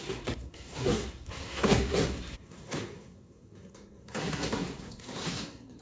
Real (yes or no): no